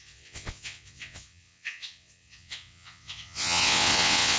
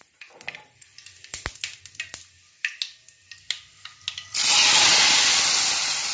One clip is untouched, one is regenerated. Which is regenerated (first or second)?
first